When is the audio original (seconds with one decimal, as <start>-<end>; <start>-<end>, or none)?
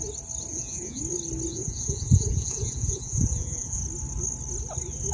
0.0-0.5; 1.0-1.5; 3.8-5.1